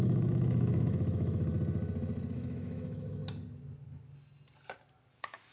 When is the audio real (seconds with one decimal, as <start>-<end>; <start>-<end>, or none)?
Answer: 1.5-2.3; 3.2-5.1